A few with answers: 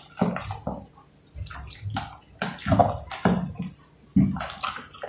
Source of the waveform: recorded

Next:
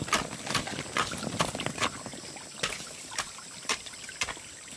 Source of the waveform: recorded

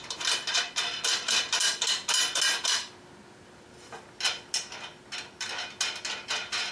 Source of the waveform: recorded